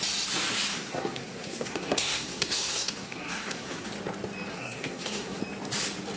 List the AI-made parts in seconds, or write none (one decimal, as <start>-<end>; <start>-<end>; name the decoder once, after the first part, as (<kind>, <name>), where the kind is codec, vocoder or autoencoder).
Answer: 0.7-3.9 (codec, SNAC); 4.5-5.4